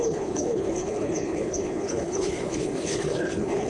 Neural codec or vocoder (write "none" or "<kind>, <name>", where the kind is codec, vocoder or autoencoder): codec, HILCodec